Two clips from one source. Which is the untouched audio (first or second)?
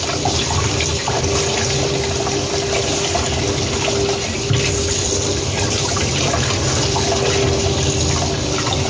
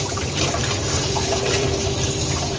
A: first